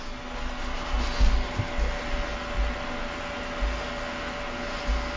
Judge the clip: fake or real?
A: real